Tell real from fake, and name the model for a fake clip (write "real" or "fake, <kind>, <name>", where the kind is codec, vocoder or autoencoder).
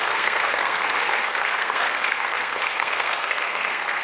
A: fake, codec, SNAC